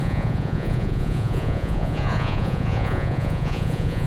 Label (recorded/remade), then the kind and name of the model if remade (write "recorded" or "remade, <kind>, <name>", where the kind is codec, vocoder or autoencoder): remade, vocoder, Vocos